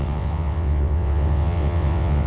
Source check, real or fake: fake